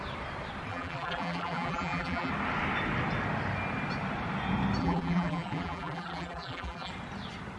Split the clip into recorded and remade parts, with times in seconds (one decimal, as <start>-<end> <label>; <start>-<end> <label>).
0.0-0.7 recorded; 0.7-2.3 remade; 2.3-4.8 recorded; 4.8-6.9 remade; 6.9-7.6 recorded